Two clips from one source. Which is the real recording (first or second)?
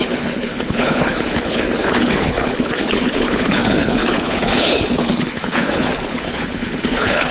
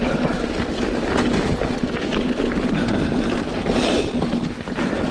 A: second